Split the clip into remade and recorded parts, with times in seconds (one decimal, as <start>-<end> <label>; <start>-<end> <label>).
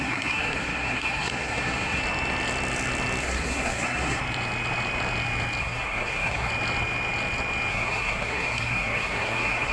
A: 0.0-2.0 remade; 2.0-3.2 recorded; 3.2-4.2 remade; 4.2-5.6 recorded; 5.6-6.5 remade; 6.5-7.7 recorded; 7.7-9.7 remade